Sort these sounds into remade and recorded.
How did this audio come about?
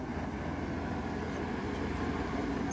recorded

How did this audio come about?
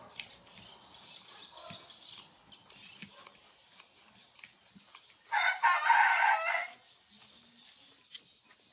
recorded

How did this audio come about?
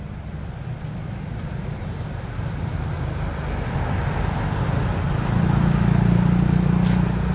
recorded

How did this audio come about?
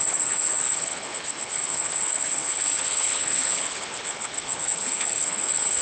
remade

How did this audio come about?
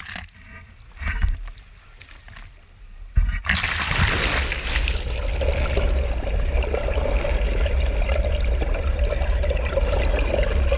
recorded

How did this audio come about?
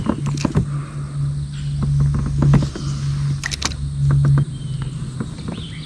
recorded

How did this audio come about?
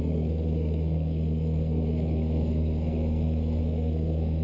remade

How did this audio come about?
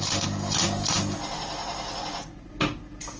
recorded